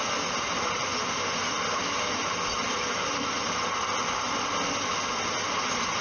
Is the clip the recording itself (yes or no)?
yes